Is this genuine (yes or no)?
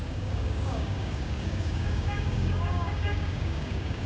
no